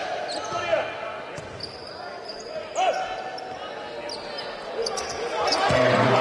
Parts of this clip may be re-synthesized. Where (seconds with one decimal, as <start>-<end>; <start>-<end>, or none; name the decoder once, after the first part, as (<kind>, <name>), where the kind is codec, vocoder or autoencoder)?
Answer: none